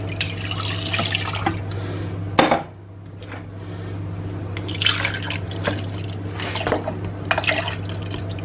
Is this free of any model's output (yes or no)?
yes